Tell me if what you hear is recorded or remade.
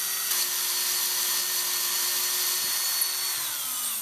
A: recorded